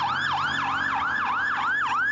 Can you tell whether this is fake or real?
fake